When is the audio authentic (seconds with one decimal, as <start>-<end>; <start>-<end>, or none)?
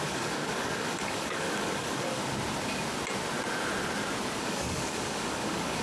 2.2-4.4